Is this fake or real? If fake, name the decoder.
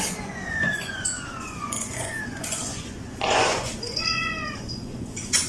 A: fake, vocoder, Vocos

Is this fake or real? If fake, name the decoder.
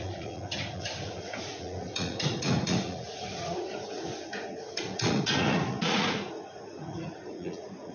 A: fake, vocoder, Vocos